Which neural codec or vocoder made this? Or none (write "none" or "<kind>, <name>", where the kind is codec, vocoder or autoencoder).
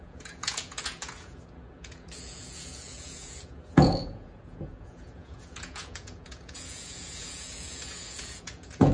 vocoder, Vocos